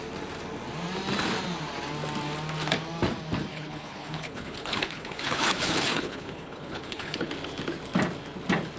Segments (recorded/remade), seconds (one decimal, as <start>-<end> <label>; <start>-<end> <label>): 0.0-3.5 recorded; 3.5-7.3 remade; 7.3-8.8 recorded